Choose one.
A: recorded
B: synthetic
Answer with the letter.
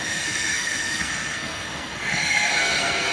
B